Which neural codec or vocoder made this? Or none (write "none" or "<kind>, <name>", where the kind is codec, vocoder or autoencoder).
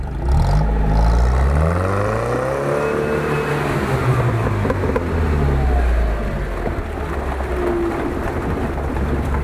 none